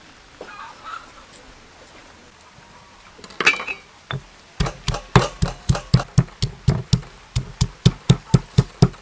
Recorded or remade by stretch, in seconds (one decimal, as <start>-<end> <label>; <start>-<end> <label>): 0.0-9.0 recorded